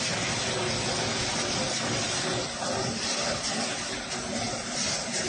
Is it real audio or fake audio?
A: real